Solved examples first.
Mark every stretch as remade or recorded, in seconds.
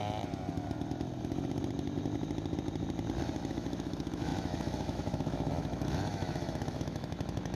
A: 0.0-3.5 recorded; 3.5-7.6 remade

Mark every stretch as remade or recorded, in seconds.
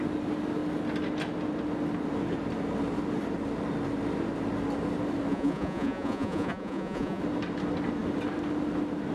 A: 0.0-5.3 recorded; 5.3-7.2 remade; 7.2-9.1 recorded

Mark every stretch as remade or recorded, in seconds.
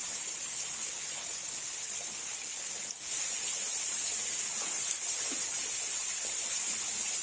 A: 0.0-1.3 remade; 1.3-7.2 recorded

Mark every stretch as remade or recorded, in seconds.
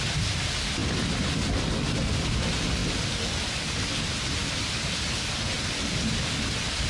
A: 0.0-6.9 recorded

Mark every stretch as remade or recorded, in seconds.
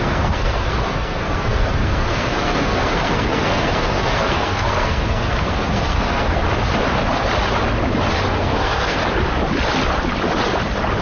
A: 0.0-6.4 remade; 6.4-8.3 recorded; 8.3-9.0 remade; 9.0-11.0 recorded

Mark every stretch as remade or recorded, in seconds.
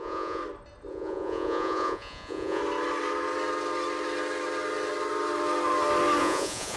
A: 0.0-0.4 remade; 0.4-0.9 recorded; 0.9-2.6 remade; 2.6-6.2 recorded; 6.2-6.8 remade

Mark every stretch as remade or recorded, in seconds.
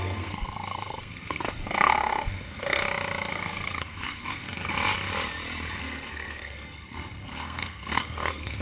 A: 0.0-2.8 remade; 2.8-3.3 recorded; 3.3-4.7 remade; 4.7-5.8 recorded; 5.8-8.6 remade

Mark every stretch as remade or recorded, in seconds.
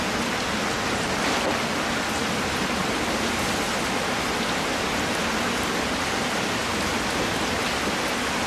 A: 0.0-8.5 recorded